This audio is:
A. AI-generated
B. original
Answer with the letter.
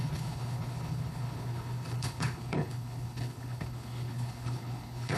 A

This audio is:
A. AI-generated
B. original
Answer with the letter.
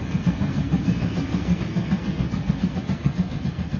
A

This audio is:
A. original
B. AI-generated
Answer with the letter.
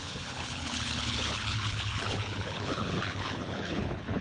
B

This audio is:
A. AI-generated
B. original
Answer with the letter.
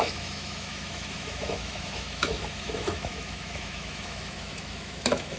A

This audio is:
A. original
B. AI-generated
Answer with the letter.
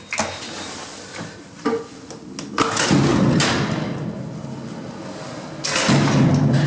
A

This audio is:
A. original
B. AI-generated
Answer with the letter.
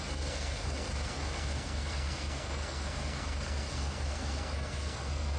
B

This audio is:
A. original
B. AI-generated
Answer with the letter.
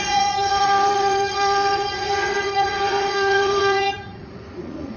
B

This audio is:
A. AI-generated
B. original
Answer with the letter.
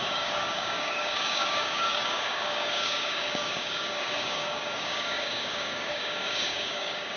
A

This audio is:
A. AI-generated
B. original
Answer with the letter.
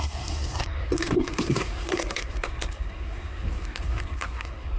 A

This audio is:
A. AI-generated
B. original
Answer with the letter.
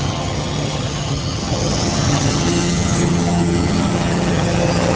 A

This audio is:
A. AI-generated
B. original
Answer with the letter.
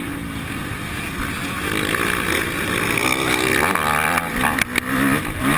B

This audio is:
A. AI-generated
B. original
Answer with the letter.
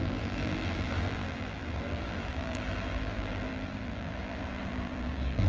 A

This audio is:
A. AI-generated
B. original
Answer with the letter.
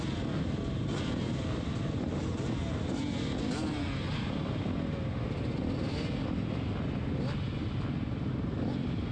B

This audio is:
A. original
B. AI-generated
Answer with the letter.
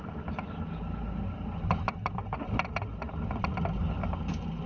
A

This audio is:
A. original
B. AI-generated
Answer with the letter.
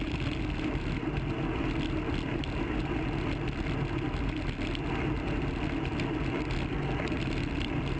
A